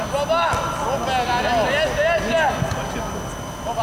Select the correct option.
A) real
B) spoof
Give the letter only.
A